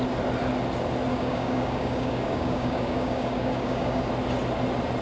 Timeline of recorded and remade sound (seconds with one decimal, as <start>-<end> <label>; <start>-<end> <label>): 0.0-1.1 recorded; 1.1-4.1 remade; 4.1-5.0 recorded